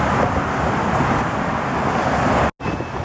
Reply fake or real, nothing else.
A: real